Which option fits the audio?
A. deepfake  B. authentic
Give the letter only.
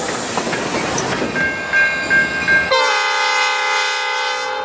B